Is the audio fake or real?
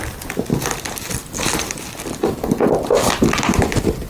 real